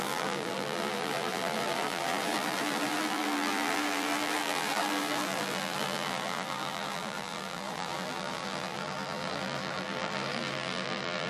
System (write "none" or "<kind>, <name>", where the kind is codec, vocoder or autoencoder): vocoder, BigVGAN v2